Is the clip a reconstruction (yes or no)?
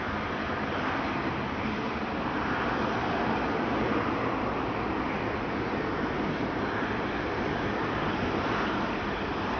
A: no